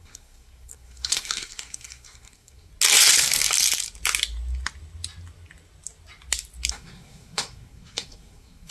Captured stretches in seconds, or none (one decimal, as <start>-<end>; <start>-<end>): 2.7-6.7